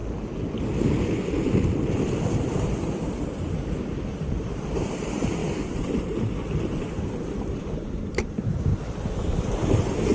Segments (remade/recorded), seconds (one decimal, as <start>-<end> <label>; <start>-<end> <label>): 0.0-10.1 recorded